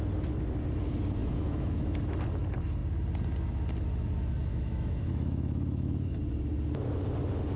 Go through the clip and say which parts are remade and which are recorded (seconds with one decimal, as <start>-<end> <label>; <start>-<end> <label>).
0.0-1.2 recorded; 1.2-2.0 remade; 2.0-4.5 recorded; 4.5-6.2 remade; 6.2-7.6 recorded